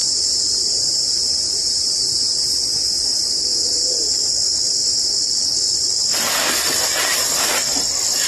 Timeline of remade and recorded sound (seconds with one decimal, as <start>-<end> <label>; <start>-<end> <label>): 0.0-2.7 remade; 2.7-3.6 recorded; 3.6-4.3 remade; 4.3-8.3 recorded